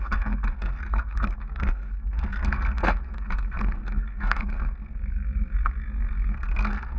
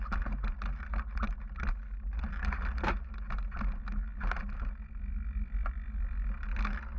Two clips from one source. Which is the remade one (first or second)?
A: first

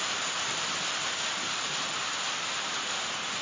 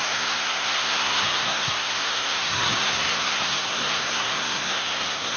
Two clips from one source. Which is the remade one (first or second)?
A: second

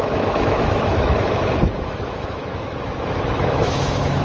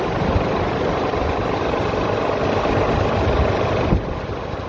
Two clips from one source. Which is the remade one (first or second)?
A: first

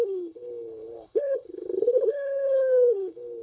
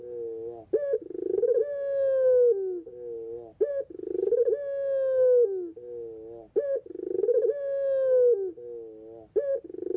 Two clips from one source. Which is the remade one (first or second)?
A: first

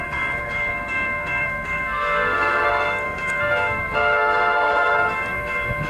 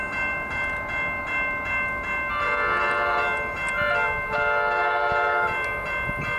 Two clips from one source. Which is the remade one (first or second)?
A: first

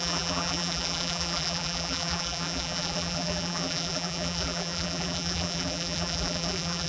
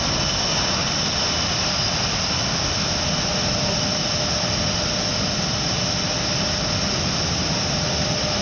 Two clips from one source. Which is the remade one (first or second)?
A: first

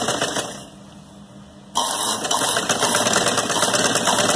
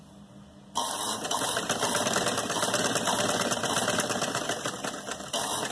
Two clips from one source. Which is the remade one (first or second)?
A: second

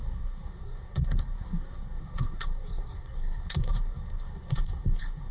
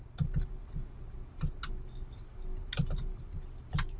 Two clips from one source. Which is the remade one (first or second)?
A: first